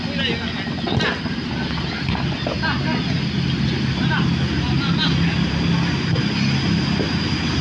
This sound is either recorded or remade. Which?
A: recorded